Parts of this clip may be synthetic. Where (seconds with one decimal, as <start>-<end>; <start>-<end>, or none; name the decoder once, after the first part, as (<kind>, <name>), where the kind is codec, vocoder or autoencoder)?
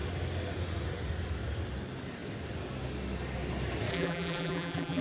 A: 3.9-5.0 (vocoder, BigVGAN v2)